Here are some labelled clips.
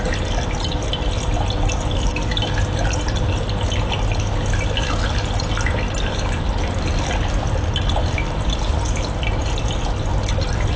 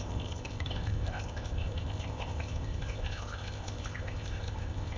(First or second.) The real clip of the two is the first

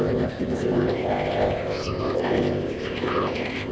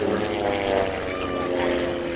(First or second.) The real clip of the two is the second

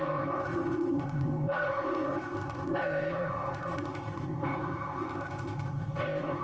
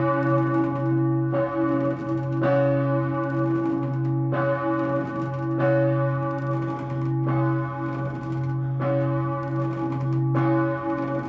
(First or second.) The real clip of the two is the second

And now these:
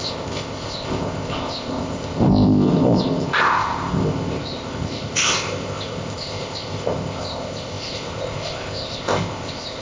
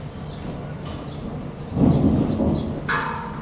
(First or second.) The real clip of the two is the second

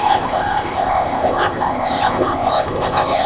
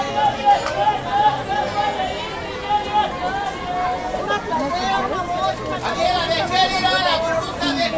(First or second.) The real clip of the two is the second